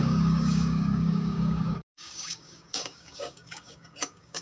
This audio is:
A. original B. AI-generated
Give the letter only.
B